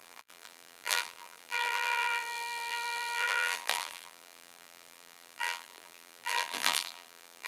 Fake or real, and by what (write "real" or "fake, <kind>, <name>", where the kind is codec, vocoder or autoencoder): fake, vocoder, BigVGAN v2